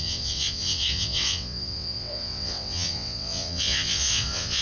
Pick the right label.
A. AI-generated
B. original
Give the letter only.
A